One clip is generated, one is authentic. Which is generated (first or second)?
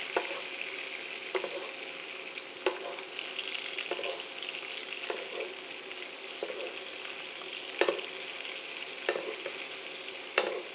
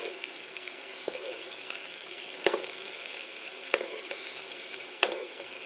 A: second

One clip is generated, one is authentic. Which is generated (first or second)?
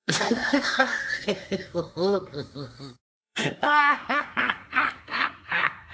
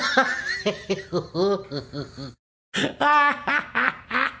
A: first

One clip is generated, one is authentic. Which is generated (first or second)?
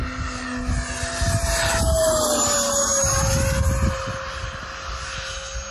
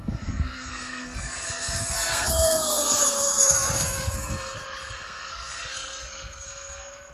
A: second